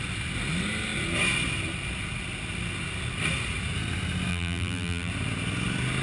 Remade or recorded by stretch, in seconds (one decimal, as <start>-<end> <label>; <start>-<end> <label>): 0.0-4.3 recorded; 4.3-5.1 remade; 5.1-6.0 recorded